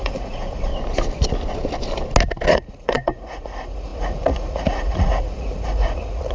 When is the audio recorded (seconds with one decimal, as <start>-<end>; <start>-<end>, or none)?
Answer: 0.7-2.5